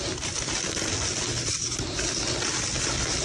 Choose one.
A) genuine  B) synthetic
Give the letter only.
A